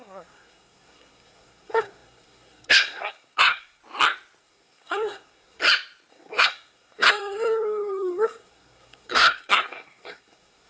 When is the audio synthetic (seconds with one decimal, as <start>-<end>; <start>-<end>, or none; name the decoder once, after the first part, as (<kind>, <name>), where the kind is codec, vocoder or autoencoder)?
0.0-3.8 (codec, SNAC); 4.4-5.6; 6.1-10.7